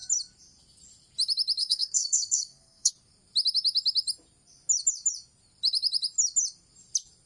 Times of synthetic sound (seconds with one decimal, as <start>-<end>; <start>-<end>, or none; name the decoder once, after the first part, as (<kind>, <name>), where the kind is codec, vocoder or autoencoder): 1.6-2.9 (codec, SNAC)